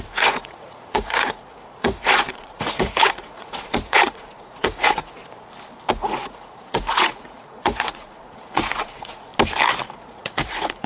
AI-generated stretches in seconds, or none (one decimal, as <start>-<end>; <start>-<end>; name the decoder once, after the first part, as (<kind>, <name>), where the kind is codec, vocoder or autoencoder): 0.0-5.2 (vocoder, Vocos); 5.9-9.3; 9.9-10.9